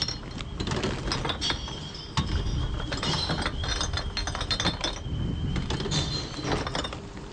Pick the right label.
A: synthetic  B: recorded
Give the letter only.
B